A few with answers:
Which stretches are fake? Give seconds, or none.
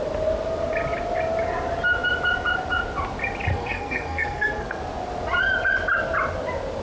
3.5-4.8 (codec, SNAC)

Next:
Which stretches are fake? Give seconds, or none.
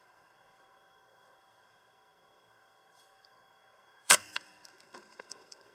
0.0-5.7 (codec, SNAC)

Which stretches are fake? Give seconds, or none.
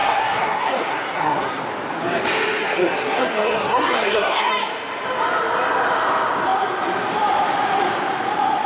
0.0-1.6 (codec, SNAC); 2.6-4.5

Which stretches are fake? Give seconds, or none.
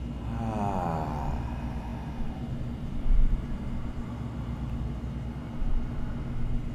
none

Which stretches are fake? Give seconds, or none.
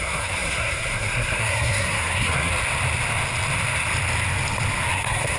0.0-2.5 (codec, SNAC); 4.9-5.4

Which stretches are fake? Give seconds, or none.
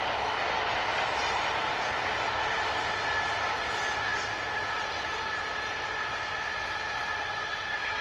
none